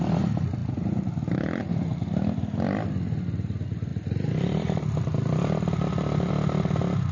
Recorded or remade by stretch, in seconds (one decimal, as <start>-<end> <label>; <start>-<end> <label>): 0.0-7.1 recorded